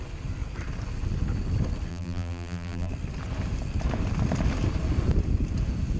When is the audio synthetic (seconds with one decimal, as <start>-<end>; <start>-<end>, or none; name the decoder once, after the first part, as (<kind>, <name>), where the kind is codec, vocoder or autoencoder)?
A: 1.9-2.9 (vocoder, BigVGAN v2)